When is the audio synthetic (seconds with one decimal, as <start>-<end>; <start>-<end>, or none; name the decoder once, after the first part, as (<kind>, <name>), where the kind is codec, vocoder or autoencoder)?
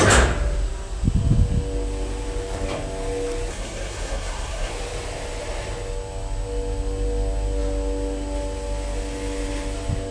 3.5-4.7 (codec, SNAC)